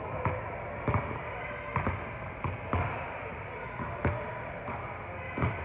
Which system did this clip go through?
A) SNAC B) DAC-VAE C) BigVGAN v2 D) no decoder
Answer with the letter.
D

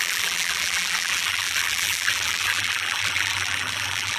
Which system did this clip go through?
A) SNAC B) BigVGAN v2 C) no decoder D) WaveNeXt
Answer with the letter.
B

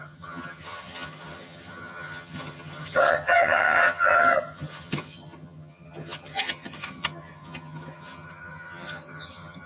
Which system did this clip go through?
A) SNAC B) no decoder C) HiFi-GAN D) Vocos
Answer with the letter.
C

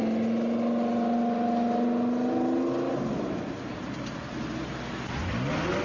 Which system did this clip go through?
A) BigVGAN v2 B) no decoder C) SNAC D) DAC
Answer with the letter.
B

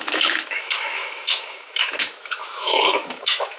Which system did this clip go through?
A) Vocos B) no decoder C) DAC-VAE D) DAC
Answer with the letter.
C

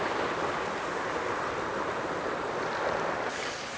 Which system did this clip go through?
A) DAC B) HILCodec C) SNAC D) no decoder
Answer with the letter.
D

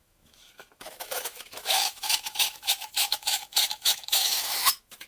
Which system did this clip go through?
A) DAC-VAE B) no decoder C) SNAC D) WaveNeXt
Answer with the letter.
A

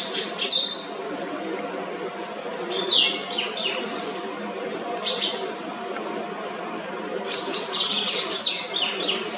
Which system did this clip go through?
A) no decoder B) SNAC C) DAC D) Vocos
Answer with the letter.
A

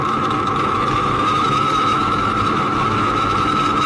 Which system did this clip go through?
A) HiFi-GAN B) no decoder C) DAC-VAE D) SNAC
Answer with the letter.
C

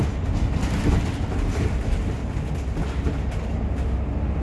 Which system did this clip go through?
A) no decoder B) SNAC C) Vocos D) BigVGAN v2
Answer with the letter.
A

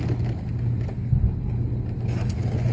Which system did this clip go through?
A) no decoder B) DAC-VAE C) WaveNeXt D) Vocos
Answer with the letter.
A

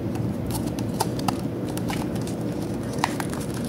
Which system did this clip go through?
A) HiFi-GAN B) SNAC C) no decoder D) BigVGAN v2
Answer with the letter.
D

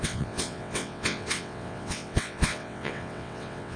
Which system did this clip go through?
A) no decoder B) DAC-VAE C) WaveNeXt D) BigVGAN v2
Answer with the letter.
C